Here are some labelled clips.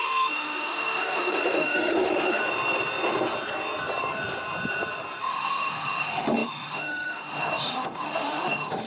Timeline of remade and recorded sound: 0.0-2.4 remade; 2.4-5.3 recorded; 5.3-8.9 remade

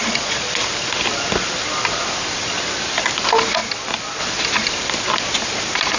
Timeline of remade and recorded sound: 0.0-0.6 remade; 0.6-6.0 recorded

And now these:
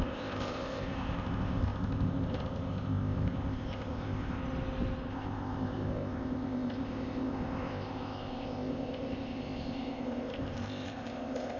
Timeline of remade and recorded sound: 0.0-4.4 remade; 4.4-5.1 recorded; 5.1-11.6 remade

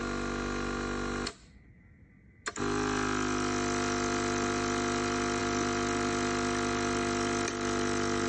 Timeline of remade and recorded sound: 0.0-8.3 recorded

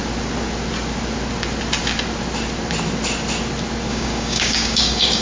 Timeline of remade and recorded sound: 0.0-3.9 recorded; 3.9-5.2 remade

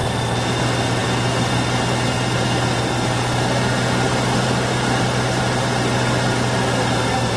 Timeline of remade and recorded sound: 0.0-7.4 recorded

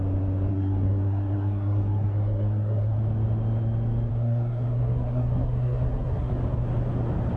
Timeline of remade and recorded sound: 0.0-0.5 recorded; 0.5-3.0 remade; 3.0-4.1 recorded; 4.1-6.3 remade; 6.3-7.4 recorded

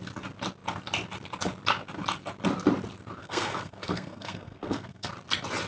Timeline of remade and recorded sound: 0.0-3.2 recorded; 3.2-5.1 remade; 5.1-5.7 recorded